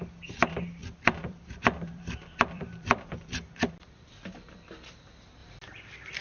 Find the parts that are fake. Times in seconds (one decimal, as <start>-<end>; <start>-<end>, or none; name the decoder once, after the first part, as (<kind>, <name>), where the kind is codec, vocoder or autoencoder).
0.8-4.5 (vocoder, BigVGAN v2)